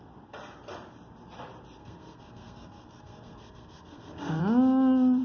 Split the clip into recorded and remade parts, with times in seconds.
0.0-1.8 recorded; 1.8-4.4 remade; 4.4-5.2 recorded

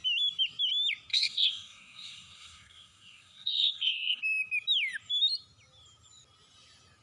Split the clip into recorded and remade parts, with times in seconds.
0.0-1.1 recorded; 1.1-4.2 remade; 4.2-7.0 recorded

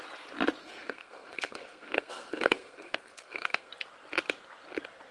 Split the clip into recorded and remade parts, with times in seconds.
0.0-0.6 recorded; 0.6-3.7 remade; 3.7-5.1 recorded

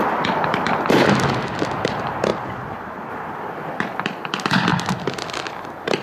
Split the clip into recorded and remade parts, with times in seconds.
0.0-6.0 recorded

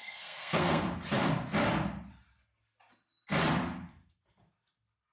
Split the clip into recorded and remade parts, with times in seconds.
0.0-0.8 remade; 0.8-5.1 recorded

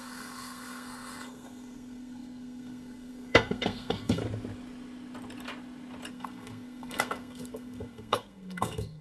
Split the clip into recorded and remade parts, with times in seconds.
0.0-4.2 remade; 4.2-6.1 recorded; 6.1-9.0 remade

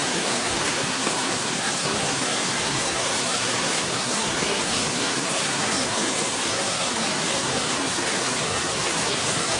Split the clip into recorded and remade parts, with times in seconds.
0.0-9.6 remade